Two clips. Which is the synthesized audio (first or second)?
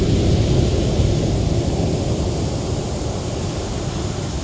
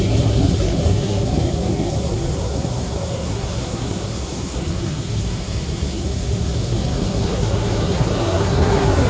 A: second